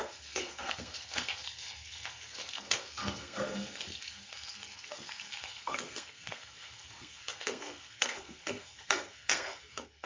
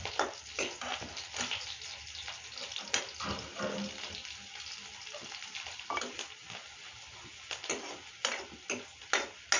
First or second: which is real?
second